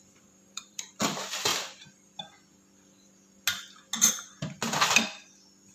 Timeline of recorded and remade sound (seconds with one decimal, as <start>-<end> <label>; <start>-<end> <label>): 0.0-0.9 remade; 0.9-5.7 recorded

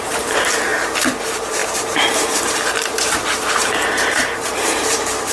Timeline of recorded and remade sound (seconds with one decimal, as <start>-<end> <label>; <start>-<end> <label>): 0.0-2.9 remade; 2.9-3.4 recorded; 3.4-5.3 remade

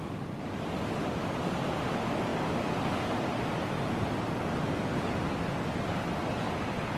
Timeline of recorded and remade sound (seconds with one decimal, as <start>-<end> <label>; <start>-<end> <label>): 0.0-7.0 recorded

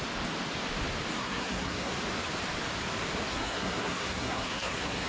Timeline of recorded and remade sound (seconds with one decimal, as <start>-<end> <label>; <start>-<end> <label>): 0.0-1.2 recorded; 1.2-1.9 remade; 1.9-3.3 recorded; 3.3-5.1 remade

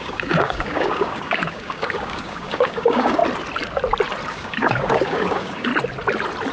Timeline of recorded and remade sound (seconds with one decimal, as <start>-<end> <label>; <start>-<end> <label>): 0.0-3.2 remade; 3.2-4.3 recorded; 4.3-5.7 remade; 5.7-6.5 recorded